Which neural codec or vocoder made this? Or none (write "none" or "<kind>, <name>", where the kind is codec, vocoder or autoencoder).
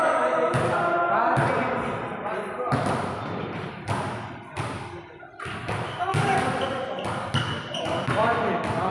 none